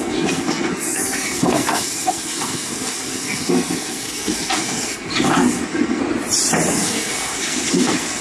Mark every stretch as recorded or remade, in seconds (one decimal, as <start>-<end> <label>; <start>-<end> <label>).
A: 0.0-6.0 remade; 6.0-6.7 recorded; 6.7-8.2 remade